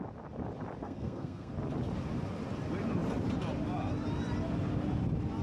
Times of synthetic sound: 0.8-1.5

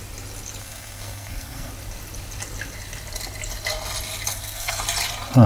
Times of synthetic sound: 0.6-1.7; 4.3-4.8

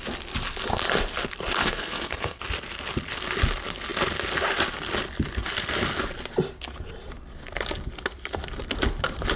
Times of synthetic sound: 1.6-2.4